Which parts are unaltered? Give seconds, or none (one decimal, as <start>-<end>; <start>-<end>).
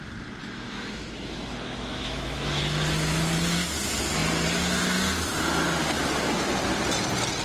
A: 0.0-0.4; 2.6-7.4